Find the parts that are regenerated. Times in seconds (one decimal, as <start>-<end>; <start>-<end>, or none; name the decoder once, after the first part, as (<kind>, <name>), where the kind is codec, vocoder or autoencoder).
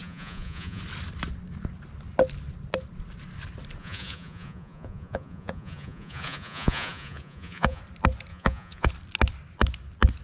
0.0-0.8 (vocoder, Vocos); 3.8-7.8; 8.3-8.9